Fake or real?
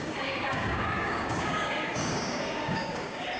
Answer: fake